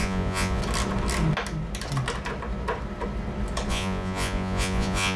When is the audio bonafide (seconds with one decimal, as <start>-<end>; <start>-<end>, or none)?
0.6-3.7